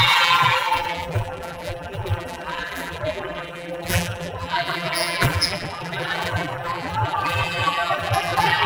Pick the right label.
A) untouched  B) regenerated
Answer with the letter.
B